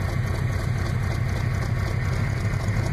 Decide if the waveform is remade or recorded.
recorded